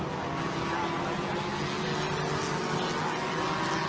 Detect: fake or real real